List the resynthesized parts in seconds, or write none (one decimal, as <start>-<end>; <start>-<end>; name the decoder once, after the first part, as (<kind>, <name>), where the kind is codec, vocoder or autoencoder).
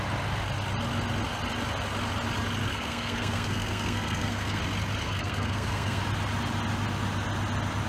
2.7-4.6 (codec, SNAC); 5.0-6.0